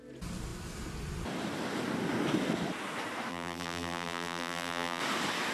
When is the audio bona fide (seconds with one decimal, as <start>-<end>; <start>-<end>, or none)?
0.0-3.3; 5.0-5.5